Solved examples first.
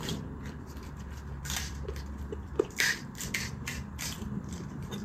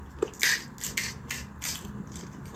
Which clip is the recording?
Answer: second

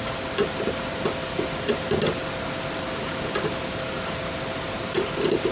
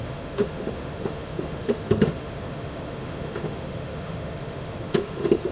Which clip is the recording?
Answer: first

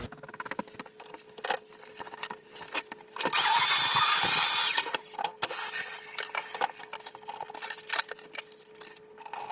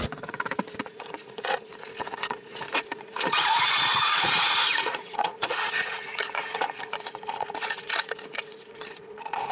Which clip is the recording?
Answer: first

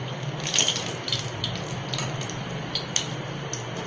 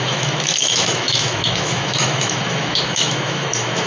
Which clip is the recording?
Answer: first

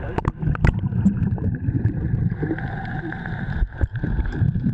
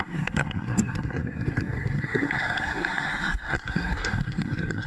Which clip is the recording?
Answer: first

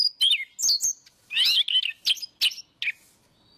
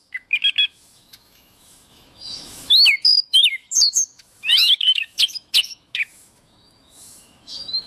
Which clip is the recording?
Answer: first